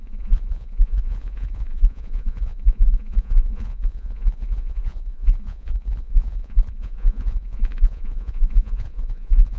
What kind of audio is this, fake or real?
fake